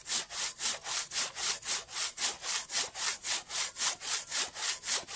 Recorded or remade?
recorded